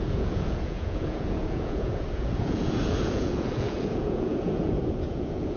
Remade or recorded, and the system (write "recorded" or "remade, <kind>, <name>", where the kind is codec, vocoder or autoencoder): remade, vocoder, Vocos